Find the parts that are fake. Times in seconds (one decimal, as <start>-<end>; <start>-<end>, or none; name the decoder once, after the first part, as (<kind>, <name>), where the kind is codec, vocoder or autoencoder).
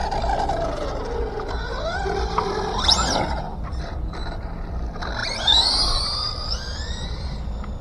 none